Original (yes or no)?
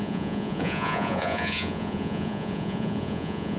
no